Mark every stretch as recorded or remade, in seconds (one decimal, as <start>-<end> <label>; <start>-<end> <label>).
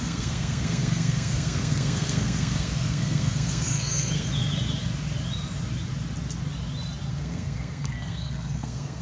0.0-4.3 remade; 4.3-7.1 recorded; 7.1-9.0 remade